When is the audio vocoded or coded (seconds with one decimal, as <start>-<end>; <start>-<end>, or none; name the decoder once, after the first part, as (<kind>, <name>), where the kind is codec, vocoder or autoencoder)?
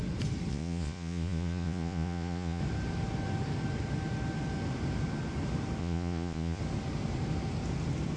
0.5-2.6 (vocoder, Vocos); 5.8-6.6